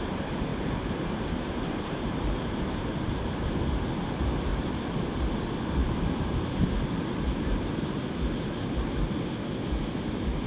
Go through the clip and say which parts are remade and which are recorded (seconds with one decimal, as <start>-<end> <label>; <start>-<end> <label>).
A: 0.0-0.5 recorded; 0.5-2.6 remade; 2.6-4.5 recorded; 4.5-5.2 remade; 5.2-5.8 recorded; 5.8-6.5 remade; 6.5-10.5 recorded

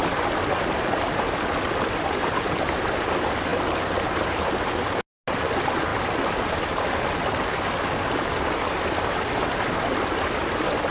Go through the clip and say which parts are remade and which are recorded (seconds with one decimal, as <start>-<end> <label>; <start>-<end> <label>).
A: 0.0-10.9 recorded